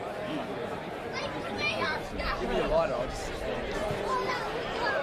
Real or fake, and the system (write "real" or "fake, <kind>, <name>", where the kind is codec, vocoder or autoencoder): fake, vocoder, BigVGAN v2